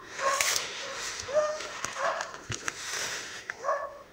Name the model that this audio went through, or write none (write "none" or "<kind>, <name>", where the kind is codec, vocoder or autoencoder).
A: autoencoder, DAC-VAE